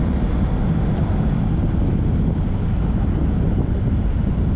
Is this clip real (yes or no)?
yes